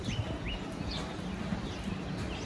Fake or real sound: real